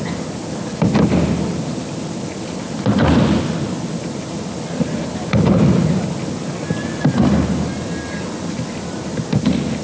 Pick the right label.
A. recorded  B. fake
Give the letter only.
A